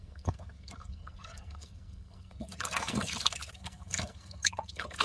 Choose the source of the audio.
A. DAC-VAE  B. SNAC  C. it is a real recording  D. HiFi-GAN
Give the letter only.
B